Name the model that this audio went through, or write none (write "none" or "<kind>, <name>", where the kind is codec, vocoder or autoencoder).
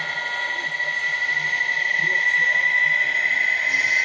none